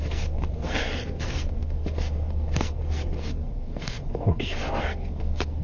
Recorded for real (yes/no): no